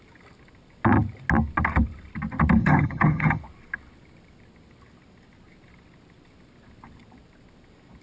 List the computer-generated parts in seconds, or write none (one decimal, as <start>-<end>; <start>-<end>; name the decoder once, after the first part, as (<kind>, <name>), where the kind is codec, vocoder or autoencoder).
2.6-3.4 (vocoder, HiFi-GAN)